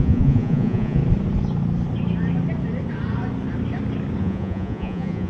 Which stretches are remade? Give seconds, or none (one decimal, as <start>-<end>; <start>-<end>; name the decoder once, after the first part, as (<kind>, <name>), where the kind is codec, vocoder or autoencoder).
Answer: 0.0-1.0 (vocoder, Vocos); 4.2-5.3